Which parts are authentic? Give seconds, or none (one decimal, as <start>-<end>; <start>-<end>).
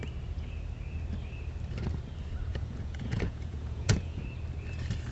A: 0.0-2.5; 4.2-5.1